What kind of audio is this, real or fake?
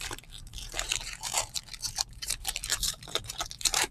fake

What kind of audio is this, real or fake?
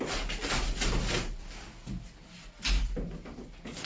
real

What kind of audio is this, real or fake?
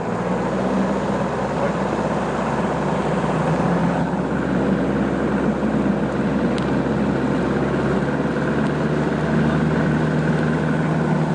real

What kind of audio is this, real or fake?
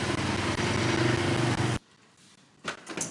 real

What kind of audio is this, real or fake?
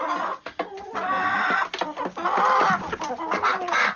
real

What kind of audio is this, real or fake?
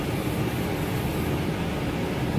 real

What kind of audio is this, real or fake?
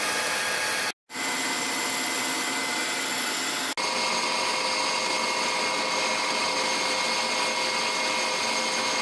real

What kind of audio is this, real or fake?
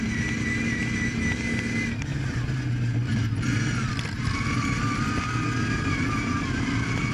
real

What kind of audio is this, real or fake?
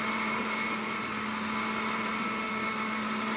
real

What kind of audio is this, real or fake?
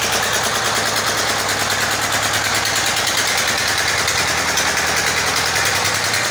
real